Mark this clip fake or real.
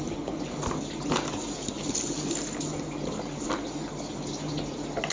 real